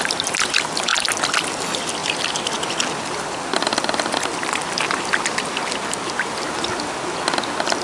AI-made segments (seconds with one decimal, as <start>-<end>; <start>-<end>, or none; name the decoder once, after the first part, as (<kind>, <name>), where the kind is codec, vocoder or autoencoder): 0.9-1.6 (vocoder, BigVGAN v2); 2.0-5.2